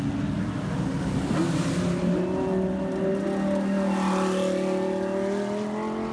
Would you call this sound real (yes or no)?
yes